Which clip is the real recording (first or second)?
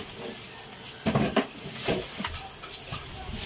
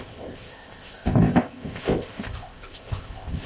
first